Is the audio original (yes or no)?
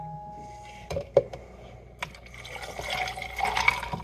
yes